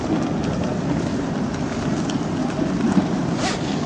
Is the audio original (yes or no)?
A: yes